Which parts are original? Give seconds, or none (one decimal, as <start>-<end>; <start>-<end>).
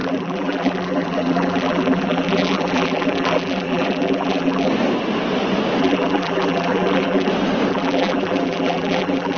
4.7-5.8; 7.3-7.7